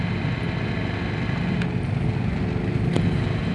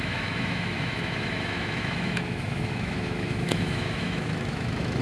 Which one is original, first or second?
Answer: first